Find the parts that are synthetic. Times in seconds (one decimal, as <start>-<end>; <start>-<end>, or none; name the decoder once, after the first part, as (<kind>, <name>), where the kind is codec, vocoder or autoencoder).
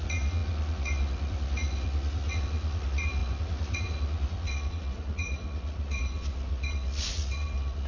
0.0-7.9 (vocoder, Vocos)